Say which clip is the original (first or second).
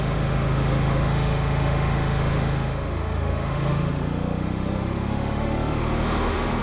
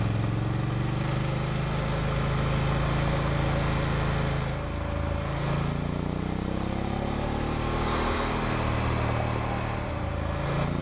second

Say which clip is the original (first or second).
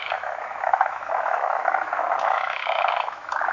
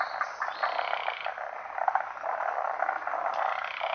second